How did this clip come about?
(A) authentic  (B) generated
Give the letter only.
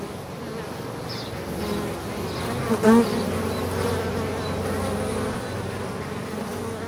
A